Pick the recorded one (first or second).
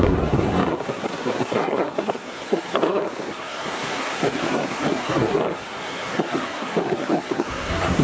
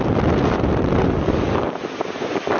second